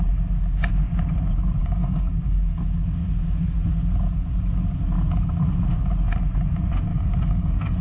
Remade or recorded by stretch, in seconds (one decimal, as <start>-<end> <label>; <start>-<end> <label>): 0.0-1.6 recorded; 1.6-2.6 remade; 2.6-6.9 recorded; 6.9-7.8 remade